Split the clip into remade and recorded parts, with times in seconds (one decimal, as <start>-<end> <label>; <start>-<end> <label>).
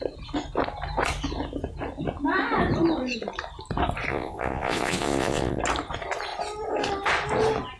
0.0-4.1 recorded; 4.1-5.6 remade; 5.6-7.8 recorded